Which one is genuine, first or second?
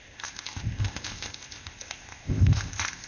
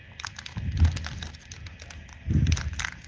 second